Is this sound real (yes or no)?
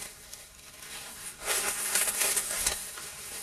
no